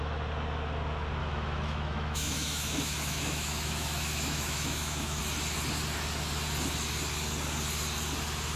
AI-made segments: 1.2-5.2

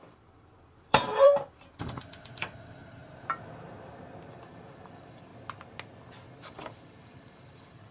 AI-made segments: 0.0-3.0; 4.3-5.3; 6.4-7.9